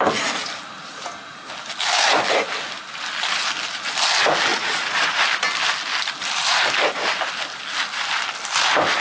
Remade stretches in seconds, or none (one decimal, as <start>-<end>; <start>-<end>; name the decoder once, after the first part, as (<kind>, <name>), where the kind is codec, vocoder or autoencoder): 4.5-5.2 (vocoder, Vocos)